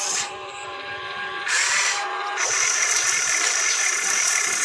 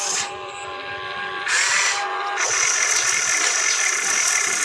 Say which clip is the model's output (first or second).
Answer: first